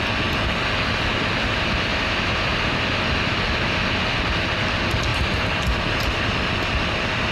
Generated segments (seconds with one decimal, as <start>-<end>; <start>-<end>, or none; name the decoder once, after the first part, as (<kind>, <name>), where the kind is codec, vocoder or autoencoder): 1.9-2.6 (vocoder, BigVGAN v2)